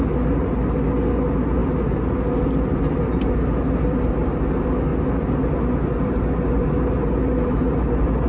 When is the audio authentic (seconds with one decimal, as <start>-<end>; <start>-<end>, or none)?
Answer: 0.0-8.3